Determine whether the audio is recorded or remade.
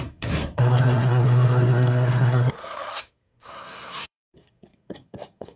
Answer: remade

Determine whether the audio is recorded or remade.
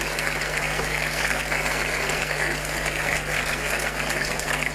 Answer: remade